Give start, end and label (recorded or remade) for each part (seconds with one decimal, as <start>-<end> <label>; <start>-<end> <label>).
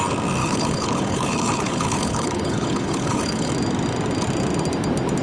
0.0-0.4 recorded; 0.4-3.5 remade; 3.5-5.2 recorded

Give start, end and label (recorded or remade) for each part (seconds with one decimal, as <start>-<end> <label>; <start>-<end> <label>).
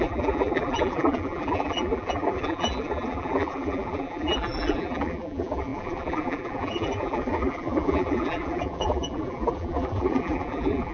0.0-10.9 remade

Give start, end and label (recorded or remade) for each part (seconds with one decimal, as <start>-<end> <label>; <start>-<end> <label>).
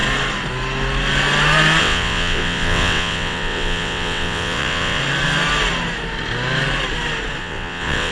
0.0-1.8 recorded; 1.8-5.0 remade; 5.0-7.4 recorded; 7.4-8.1 remade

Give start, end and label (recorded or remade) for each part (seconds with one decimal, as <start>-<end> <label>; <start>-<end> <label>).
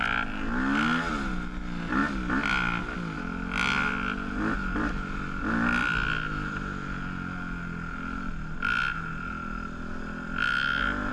0.0-11.1 recorded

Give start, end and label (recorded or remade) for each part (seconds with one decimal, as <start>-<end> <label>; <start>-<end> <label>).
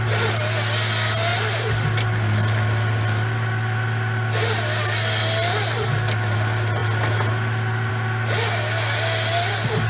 0.0-9.9 recorded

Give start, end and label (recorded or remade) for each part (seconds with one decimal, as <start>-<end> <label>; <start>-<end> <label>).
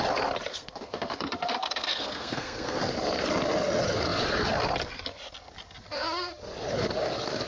0.0-0.5 recorded; 0.5-2.9 remade; 2.9-7.5 recorded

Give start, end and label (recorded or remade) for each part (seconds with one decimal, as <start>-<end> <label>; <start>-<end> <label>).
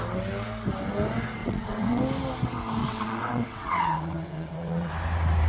0.0-1.4 recorded; 1.4-2.0 remade; 2.0-2.8 recorded; 2.8-4.9 remade; 4.9-5.5 recorded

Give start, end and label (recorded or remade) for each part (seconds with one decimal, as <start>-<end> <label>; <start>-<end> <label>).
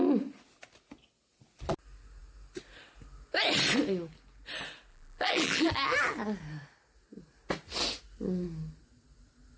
0.0-4.9 recorded; 4.9-5.7 remade; 5.7-9.6 recorded